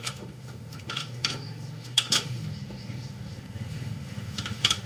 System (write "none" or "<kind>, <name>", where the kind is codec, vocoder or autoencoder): autoencoder, DAC-VAE